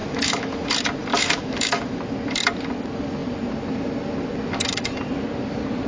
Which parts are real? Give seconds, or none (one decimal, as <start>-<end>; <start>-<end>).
0.7-1.1; 2.0-5.9